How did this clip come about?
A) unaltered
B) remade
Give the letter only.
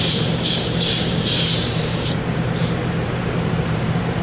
B